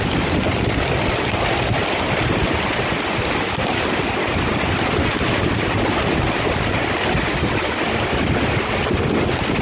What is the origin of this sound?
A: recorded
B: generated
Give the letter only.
A